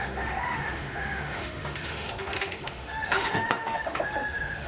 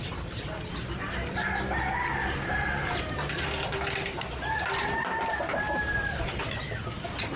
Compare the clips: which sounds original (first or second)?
second